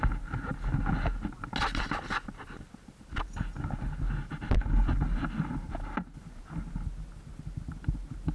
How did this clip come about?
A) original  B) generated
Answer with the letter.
A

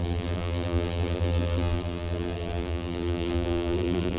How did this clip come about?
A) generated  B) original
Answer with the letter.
A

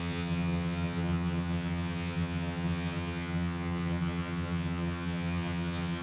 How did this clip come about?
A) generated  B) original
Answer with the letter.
A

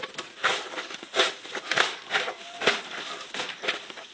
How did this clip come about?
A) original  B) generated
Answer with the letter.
A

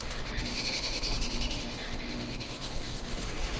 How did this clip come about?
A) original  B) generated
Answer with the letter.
B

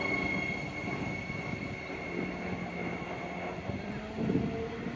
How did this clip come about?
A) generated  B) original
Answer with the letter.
B